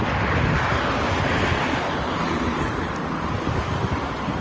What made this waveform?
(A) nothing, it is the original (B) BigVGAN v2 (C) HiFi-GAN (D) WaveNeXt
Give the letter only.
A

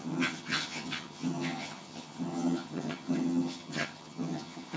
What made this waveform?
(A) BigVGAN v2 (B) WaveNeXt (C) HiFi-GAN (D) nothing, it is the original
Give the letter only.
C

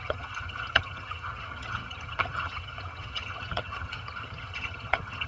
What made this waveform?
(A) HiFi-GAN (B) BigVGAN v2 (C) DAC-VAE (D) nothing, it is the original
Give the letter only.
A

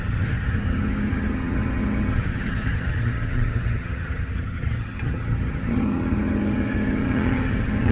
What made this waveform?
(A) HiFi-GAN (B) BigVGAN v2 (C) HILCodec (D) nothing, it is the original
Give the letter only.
A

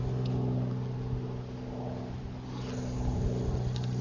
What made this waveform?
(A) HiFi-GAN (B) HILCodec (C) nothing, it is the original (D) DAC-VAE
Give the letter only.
C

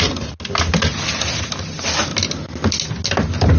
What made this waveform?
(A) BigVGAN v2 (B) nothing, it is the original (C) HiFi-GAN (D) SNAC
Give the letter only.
B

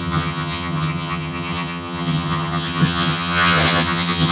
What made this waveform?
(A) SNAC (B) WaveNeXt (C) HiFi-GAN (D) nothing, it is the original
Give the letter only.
C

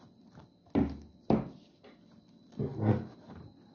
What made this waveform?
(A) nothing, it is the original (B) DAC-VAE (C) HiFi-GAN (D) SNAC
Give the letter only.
A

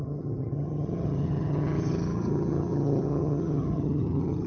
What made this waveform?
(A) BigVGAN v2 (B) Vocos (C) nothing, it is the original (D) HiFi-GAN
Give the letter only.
D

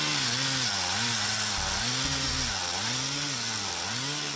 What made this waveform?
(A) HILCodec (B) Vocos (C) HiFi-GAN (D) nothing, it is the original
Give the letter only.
D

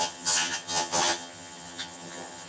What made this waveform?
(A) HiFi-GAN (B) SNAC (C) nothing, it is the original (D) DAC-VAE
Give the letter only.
A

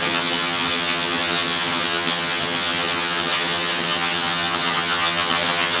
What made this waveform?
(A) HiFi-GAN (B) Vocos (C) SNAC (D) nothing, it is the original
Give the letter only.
A